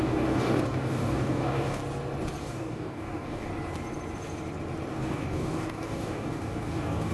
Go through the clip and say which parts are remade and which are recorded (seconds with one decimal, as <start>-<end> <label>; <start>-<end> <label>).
0.0-1.8 remade; 1.8-2.4 recorded; 2.4-3.5 remade; 3.5-4.9 recorded; 4.9-7.1 remade